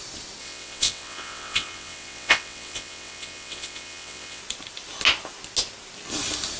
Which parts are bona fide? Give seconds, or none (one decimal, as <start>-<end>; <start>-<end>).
0.0-0.4; 4.4-6.6